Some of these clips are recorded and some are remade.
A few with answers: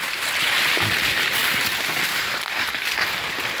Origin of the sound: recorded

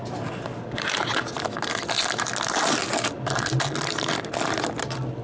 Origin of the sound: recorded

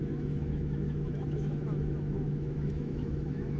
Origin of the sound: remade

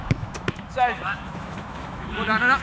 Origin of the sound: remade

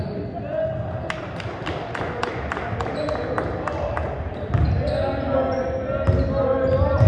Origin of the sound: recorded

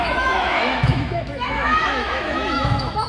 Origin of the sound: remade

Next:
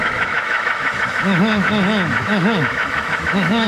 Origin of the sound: remade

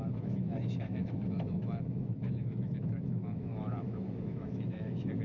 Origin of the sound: remade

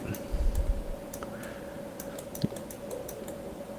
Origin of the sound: recorded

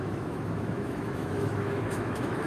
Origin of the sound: remade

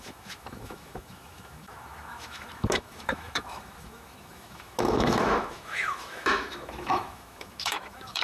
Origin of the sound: remade